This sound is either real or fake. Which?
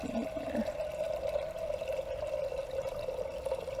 real